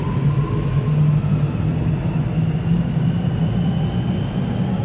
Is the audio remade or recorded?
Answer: recorded